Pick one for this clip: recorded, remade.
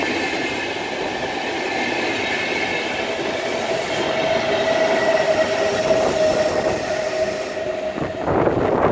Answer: recorded